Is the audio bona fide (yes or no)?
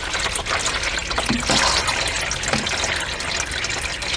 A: yes